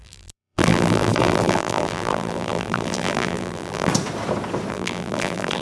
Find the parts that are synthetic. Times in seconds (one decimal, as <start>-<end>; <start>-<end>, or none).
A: 0.0-3.9; 4.7-5.6